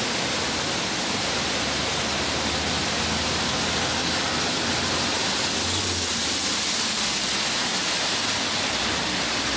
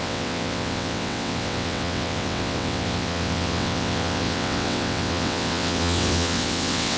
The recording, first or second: first